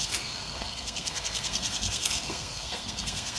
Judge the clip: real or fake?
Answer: fake